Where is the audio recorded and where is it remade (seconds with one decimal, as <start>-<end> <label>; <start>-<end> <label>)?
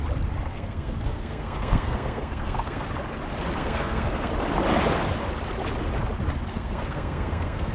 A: 0.0-0.5 recorded; 0.5-2.9 remade; 2.9-3.6 recorded; 3.6-4.3 remade; 4.3-6.5 recorded; 6.5-7.7 remade